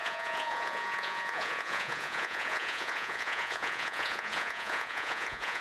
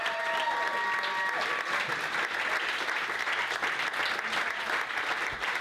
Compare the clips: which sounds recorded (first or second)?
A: second